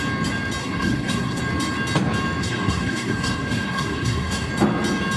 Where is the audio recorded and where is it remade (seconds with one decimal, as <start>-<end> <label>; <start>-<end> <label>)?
0.0-0.6 recorded; 0.6-1.4 remade; 1.4-2.4 recorded; 2.4-4.5 remade; 4.5-5.2 recorded